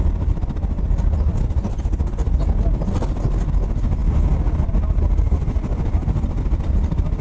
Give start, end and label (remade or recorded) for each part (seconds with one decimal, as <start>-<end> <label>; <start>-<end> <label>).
0.0-7.2 recorded